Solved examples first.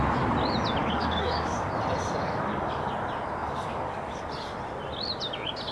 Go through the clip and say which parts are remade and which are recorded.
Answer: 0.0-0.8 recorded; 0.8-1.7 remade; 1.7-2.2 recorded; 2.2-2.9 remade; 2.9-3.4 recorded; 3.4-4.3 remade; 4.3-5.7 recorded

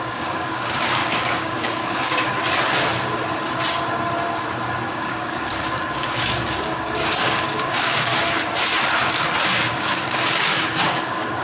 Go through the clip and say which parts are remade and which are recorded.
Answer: 0.0-2.3 remade; 2.3-4.9 recorded; 4.9-8.1 remade; 8.1-9.7 recorded; 9.7-11.4 remade

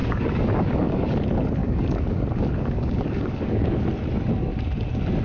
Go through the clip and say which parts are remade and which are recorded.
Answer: 0.0-1.2 remade; 1.2-1.6 recorded; 1.6-3.9 remade; 3.9-5.2 recorded